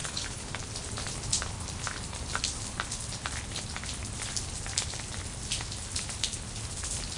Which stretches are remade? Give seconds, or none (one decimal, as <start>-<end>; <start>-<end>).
0.0-0.6